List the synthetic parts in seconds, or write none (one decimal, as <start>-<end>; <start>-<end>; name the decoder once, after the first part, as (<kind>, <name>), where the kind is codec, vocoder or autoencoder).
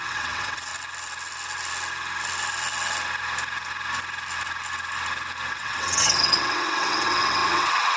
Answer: 0.0-0.7 (vocoder, WaveNeXt); 5.5-8.0